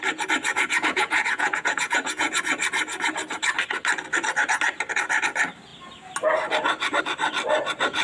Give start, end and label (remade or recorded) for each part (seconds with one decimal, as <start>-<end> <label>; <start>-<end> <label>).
0.0-0.5 recorded; 0.5-2.4 remade; 2.4-8.0 recorded